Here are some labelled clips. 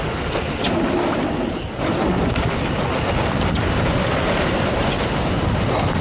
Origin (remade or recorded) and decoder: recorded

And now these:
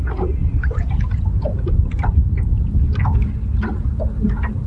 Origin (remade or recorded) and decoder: recorded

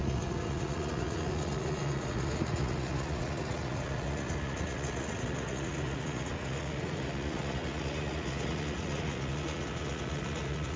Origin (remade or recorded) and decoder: remade, vocoder, Vocos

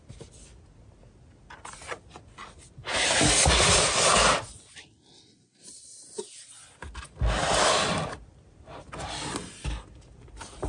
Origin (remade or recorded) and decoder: recorded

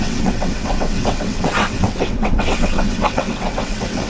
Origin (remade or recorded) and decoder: remade, vocoder, WaveNeXt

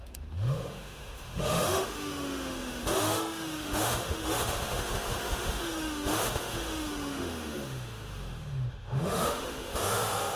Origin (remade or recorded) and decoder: remade, autoencoder, DAC-VAE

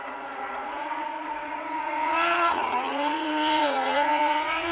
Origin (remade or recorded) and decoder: remade, vocoder, Vocos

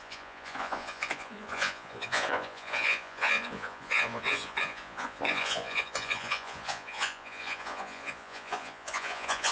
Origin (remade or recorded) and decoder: remade, vocoder, Vocos